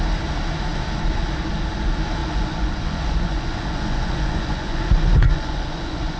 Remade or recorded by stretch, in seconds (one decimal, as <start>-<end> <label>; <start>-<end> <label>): 0.0-2.2 recorded; 2.2-6.2 remade